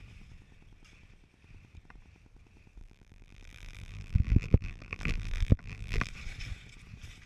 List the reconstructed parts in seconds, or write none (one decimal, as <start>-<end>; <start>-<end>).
2.8-6.1